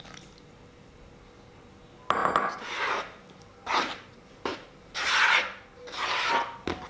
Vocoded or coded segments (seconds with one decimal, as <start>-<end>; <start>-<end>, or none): 2.2-6.3